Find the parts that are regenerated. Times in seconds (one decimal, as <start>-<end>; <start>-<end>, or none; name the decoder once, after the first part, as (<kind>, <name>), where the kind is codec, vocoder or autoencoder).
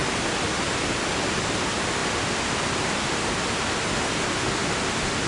none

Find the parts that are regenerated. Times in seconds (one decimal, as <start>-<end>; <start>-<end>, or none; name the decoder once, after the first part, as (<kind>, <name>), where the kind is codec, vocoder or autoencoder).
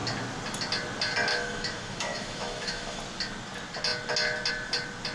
1.3-3.0 (autoencoder, DAC-VAE)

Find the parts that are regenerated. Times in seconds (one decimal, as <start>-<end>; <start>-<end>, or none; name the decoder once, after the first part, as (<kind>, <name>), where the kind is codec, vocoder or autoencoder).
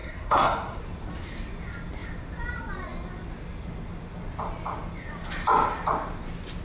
0.0-0.8 (codec, SNAC)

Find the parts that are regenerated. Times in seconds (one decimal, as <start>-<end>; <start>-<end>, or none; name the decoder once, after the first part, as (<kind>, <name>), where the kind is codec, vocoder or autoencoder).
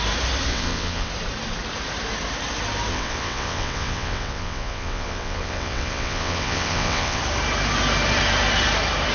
0.5-1.1 (vocoder, WaveNeXt); 2.9-7.2